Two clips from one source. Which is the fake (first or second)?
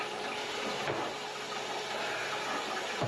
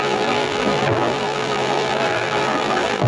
second